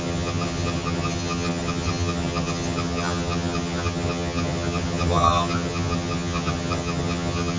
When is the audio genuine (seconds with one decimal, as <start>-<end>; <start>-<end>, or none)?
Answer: none